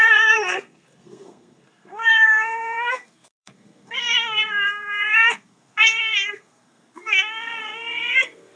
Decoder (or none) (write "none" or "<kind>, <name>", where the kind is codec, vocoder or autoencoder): codec, SNAC